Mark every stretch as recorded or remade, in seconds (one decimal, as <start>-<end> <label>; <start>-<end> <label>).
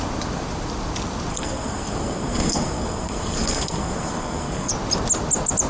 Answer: 0.0-1.3 recorded; 1.3-4.7 remade; 4.7-5.7 recorded